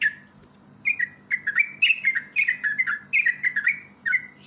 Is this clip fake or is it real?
real